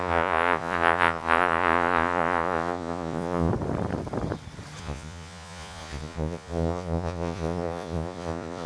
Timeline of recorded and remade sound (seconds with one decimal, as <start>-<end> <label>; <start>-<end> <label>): 0.0-3.5 remade; 3.5-4.8 recorded; 4.8-8.7 remade